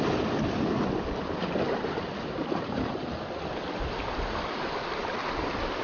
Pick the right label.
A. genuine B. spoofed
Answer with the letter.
A